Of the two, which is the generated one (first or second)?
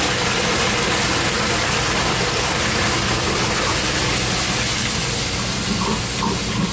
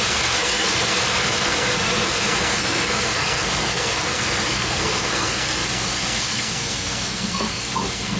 second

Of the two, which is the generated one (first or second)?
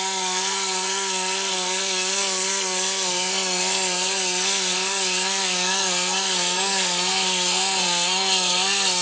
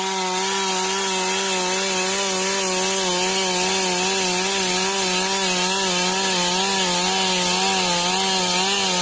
first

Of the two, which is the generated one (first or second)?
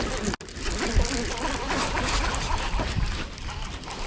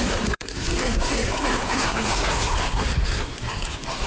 second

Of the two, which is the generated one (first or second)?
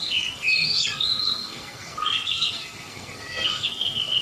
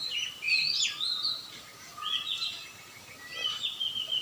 first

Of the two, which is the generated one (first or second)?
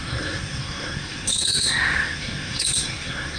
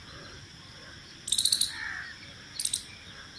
first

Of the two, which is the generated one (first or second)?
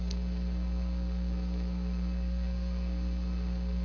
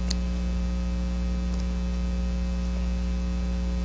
first